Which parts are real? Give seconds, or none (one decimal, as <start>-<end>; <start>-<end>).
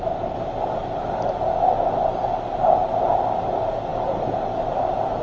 0.0-5.2